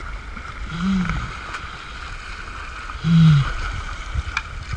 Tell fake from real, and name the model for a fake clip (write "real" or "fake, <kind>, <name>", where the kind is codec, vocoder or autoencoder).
real